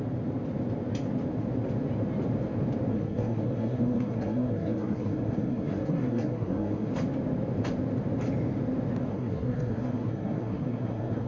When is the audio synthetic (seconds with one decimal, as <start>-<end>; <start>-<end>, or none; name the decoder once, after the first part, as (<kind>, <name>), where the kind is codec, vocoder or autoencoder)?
2.9-6.9 (codec, SNAC); 9.1-11.3